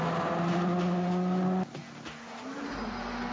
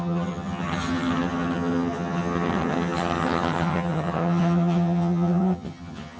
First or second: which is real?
first